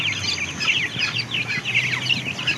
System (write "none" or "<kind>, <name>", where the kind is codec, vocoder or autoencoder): none